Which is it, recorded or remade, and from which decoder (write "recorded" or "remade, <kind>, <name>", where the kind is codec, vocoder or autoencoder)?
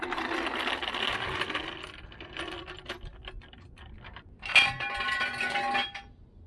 recorded